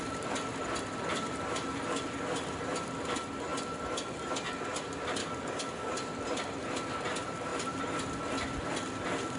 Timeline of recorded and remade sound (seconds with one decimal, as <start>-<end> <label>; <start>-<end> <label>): 0.0-5.2 recorded; 5.2-5.9 remade; 5.9-9.4 recorded